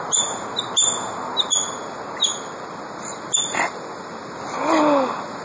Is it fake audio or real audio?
real